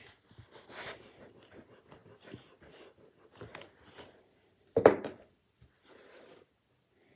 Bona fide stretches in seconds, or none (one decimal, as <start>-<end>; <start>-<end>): 0.0-7.2

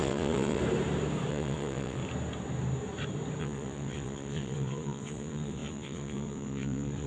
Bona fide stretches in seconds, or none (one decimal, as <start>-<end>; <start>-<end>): 0.6-1.3; 2.0-3.4

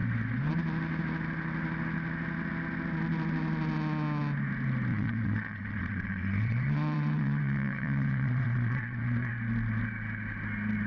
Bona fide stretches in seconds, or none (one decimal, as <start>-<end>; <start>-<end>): 0.0-4.9; 9.3-10.9

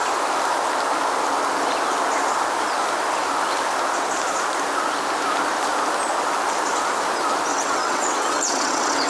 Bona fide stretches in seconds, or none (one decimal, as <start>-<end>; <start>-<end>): 0.0-7.5

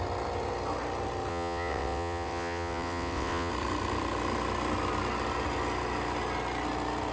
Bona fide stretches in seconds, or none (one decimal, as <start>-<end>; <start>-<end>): 0.0-1.3; 3.5-7.1